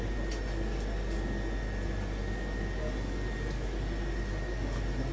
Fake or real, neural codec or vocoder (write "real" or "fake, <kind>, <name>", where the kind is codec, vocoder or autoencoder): real